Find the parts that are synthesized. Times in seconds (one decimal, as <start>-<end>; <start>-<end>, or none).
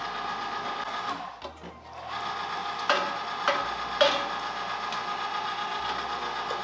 none